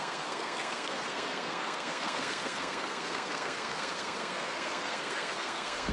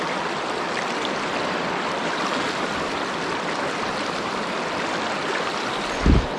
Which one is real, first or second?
second